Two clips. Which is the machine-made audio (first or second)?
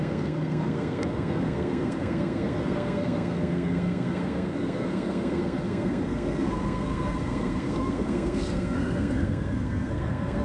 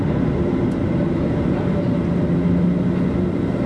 first